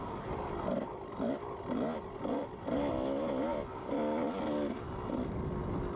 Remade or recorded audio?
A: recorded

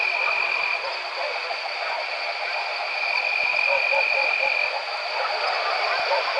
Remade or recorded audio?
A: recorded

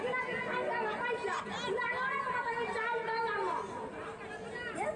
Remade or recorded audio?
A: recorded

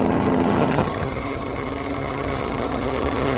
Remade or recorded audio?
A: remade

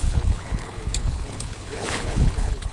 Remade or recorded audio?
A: remade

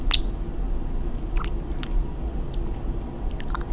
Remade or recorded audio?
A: recorded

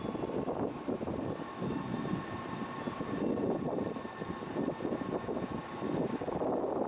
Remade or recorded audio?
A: recorded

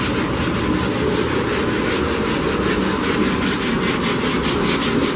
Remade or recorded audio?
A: recorded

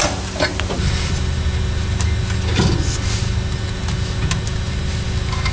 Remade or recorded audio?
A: recorded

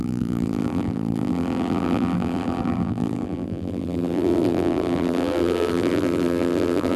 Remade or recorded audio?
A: remade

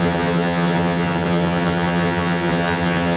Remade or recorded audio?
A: remade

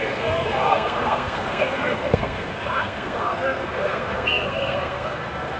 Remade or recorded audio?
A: remade